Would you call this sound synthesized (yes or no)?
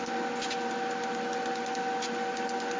no